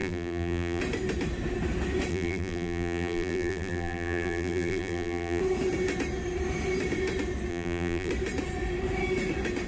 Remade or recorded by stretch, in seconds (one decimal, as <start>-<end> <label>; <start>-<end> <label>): 0.0-0.8 remade; 0.8-2.1 recorded; 2.1-5.4 remade; 5.4-7.5 recorded; 7.5-8.1 remade; 8.1-9.7 recorded